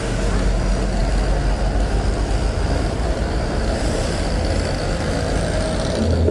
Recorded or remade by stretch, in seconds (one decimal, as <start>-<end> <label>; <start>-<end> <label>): 0.0-6.3 recorded